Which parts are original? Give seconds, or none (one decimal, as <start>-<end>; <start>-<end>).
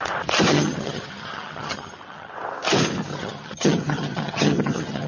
0.0-0.5; 2.3-3.1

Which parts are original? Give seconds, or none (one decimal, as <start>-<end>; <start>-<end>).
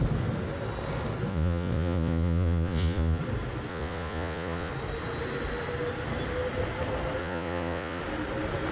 0.0-1.3; 3.2-3.7; 4.7-7.2; 8.0-8.7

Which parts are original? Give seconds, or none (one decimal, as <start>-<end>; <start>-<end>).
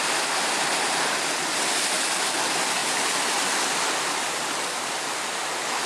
0.0-5.9